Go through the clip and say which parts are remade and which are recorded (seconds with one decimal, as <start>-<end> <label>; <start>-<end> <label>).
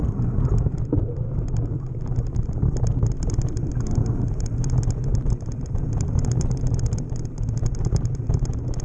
0.0-5.1 recorded; 5.1-7.3 remade; 7.3-8.8 recorded